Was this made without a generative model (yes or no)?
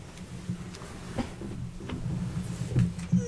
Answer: yes